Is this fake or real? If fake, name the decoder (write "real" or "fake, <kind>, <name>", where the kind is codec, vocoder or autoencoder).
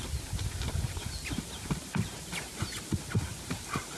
real